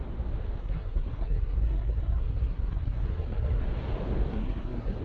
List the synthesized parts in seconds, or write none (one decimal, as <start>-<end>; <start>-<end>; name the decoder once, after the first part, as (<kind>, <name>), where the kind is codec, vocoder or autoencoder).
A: 0.6-3.6 (codec, SNAC); 4.3-5.0